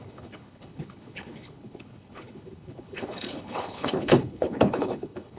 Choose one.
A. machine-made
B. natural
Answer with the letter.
A